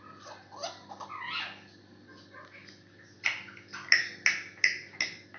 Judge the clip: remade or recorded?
recorded